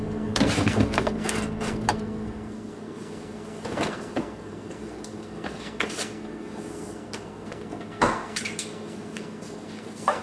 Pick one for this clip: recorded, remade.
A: remade